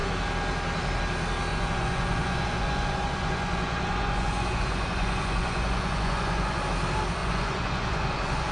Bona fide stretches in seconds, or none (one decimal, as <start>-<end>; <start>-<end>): 0.0-1.5; 6.6-7.2